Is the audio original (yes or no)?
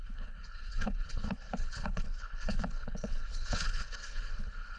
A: no